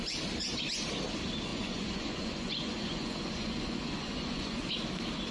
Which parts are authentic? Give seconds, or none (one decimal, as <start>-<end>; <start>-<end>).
0.0-1.5; 4.7-5.3